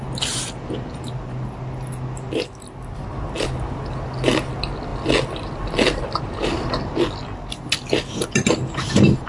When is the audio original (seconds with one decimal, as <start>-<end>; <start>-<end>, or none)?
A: 0.0-9.3